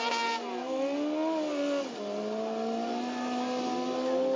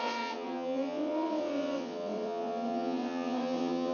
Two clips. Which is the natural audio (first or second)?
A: first